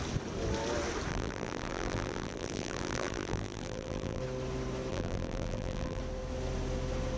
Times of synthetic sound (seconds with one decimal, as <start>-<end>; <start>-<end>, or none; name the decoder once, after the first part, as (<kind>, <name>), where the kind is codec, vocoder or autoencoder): 1.1-4.2 (vocoder, BigVGAN v2); 4.9-6.0